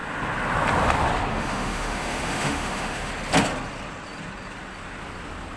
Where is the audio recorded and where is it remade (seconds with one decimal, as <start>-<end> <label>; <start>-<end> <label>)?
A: 0.0-1.3 recorded; 1.3-3.1 remade; 3.1-5.6 recorded